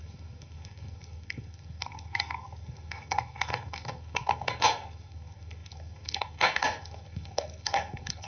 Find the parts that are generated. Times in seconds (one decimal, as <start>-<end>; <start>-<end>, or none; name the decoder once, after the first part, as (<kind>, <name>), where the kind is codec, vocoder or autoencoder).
0.0-8.3 (codec, SNAC)